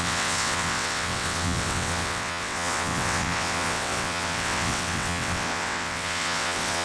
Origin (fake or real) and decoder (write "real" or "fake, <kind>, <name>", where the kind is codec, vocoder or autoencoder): fake, vocoder, WaveNeXt